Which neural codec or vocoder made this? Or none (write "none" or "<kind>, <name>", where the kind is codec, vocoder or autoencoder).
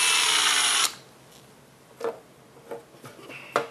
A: none